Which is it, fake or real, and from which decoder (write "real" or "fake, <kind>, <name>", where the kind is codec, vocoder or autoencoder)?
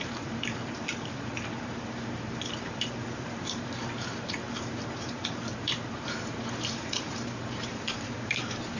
fake, vocoder, BigVGAN v2